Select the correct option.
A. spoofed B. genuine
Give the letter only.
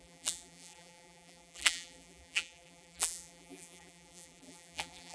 A